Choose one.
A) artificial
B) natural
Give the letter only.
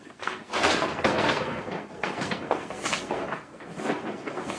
A